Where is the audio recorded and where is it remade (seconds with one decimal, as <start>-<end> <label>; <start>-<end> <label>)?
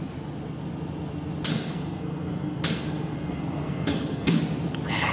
0.0-1.5 recorded; 1.5-4.4 remade; 4.4-5.1 recorded